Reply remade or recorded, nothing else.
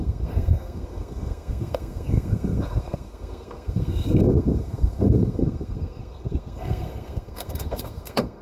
remade